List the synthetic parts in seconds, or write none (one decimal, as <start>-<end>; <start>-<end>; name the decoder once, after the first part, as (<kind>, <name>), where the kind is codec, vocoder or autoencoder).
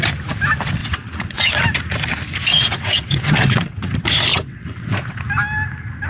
0.8-1.5 (vocoder, WaveNeXt); 2.5-3.9; 4.3-5.2